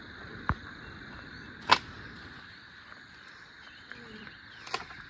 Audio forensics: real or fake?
real